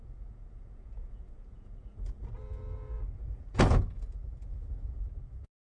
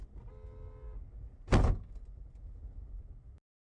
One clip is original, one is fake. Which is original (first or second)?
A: second